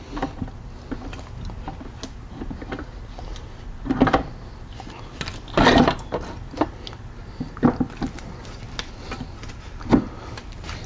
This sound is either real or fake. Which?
real